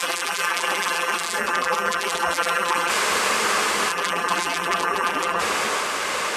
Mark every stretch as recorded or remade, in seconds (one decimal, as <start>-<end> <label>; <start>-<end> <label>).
0.0-2.9 remade; 2.9-3.9 recorded; 3.9-5.4 remade; 5.4-6.4 recorded